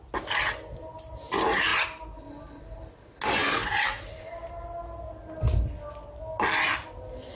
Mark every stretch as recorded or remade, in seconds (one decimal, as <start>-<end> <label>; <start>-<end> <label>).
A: 0.0-7.4 recorded

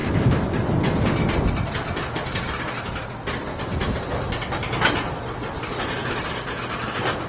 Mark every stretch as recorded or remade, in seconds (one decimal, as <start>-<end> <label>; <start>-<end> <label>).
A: 0.0-7.3 recorded

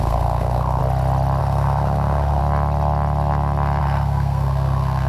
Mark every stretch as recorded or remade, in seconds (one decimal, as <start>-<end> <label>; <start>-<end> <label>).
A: 0.0-0.8 remade; 0.8-1.4 recorded; 1.4-2.4 remade; 2.4-3.8 recorded; 3.8-5.1 remade

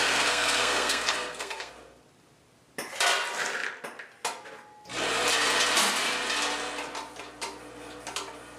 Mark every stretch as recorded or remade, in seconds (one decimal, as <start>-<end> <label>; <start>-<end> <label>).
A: 0.0-1.7 remade; 1.7-8.6 recorded

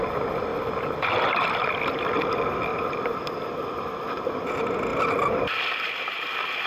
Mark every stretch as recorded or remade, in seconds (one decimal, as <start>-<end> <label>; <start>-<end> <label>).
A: 0.0-0.5 recorded; 0.5-1.8 remade; 1.8-4.9 recorded; 4.9-5.8 remade; 5.8-6.7 recorded